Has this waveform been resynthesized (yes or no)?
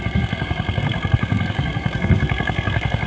yes